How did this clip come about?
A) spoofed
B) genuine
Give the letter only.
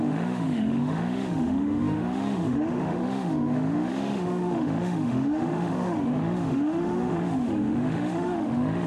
A